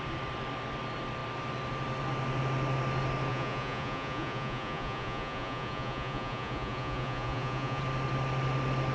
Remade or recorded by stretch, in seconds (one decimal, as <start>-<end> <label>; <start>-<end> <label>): 0.0-3.3 recorded; 3.3-7.8 remade; 7.8-8.9 recorded